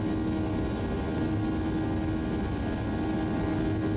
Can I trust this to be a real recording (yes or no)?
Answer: yes